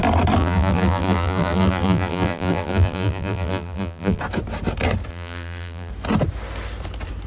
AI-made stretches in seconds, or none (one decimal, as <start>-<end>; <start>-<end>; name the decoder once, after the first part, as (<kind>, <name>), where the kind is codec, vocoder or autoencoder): 0.4-4.2 (vocoder, BigVGAN v2); 5.1-5.9